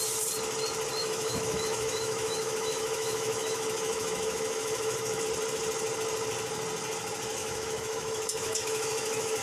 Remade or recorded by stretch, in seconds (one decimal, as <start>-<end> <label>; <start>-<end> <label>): 0.0-1.0 recorded; 1.0-5.2 remade; 5.2-7.4 recorded; 7.4-9.4 remade